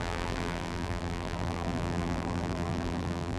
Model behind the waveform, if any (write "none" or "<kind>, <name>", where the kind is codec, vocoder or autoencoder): vocoder, BigVGAN v2